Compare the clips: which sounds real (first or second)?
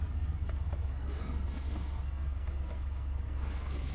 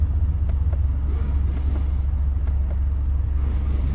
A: second